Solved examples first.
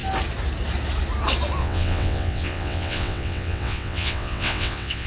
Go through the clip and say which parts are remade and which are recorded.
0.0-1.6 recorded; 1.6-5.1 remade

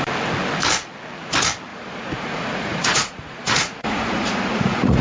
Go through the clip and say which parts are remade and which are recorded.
0.0-1.7 recorded; 1.7-5.0 remade

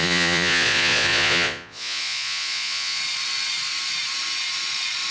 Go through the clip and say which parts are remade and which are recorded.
0.0-3.0 remade; 3.0-5.1 recorded

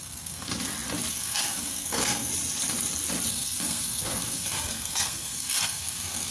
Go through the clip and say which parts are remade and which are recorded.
0.0-0.5 remade; 0.5-1.1 recorded; 1.1-2.3 remade; 2.3-3.3 recorded; 3.3-6.3 remade

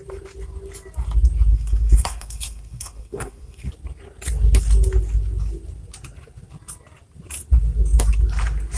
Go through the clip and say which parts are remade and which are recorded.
0.0-1.5 recorded; 1.5-3.7 remade; 3.7-8.8 recorded

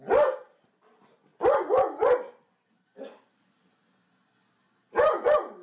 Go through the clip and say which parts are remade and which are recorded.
0.0-5.6 recorded

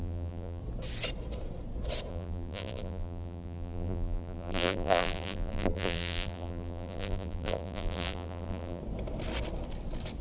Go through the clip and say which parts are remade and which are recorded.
0.0-0.6 remade; 0.6-2.1 recorded; 2.1-8.8 remade; 8.8-10.2 recorded